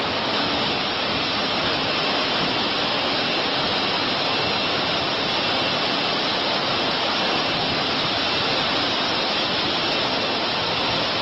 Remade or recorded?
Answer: recorded